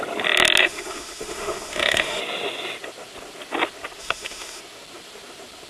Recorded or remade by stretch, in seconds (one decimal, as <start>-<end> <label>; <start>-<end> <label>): 0.0-0.6 recorded; 0.6-2.2 remade; 2.2-4.0 recorded; 4.0-4.6 remade; 4.6-5.7 recorded

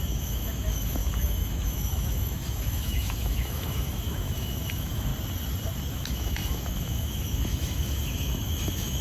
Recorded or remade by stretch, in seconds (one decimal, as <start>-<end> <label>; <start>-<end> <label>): 0.0-5.1 remade; 5.1-5.9 recorded; 5.9-9.0 remade

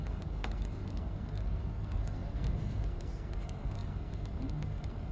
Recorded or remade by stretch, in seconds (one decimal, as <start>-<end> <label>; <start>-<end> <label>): 0.0-5.1 remade

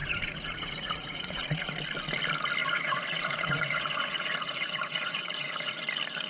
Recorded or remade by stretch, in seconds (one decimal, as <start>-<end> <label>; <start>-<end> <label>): 0.0-1.7 remade; 1.7-2.6 recorded; 2.6-5.8 remade; 5.8-6.3 recorded

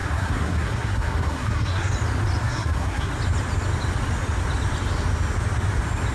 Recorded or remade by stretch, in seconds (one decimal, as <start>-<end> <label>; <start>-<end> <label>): 0.0-1.9 remade; 1.9-2.4 recorded; 2.4-3.1 remade; 3.1-6.1 recorded

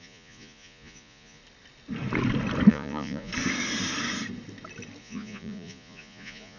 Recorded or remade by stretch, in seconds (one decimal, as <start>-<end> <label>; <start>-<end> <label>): 0.0-1.4 remade; 1.4-2.7 recorded; 2.7-3.3 remade; 3.3-5.0 recorded; 5.0-6.6 remade